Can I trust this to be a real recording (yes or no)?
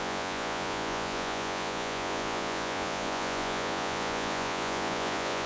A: no